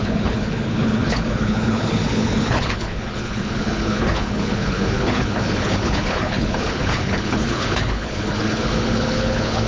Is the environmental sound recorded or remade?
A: remade